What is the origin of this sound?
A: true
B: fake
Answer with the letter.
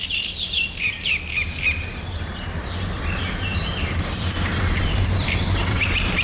B